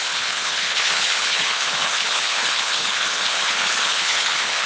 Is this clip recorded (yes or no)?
no